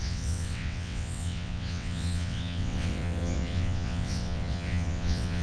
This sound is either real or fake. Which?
fake